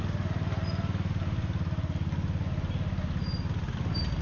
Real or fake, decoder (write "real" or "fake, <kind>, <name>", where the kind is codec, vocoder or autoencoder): real